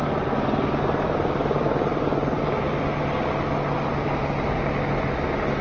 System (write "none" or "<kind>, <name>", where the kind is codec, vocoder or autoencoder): none